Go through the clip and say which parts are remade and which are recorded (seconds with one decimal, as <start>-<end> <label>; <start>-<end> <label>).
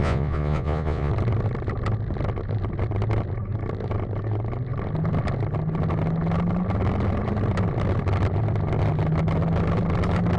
0.0-1.1 remade; 1.1-10.4 recorded